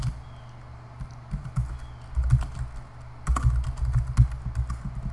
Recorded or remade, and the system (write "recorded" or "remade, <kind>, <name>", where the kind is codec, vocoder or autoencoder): recorded